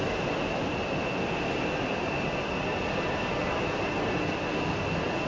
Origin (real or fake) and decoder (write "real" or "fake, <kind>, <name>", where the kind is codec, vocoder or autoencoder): real